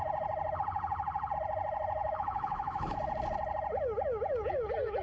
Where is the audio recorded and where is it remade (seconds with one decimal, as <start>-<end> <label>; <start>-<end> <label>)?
0.0-2.0 recorded; 2.0-3.0 remade; 3.0-5.0 recorded